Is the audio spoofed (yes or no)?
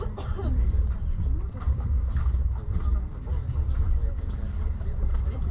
yes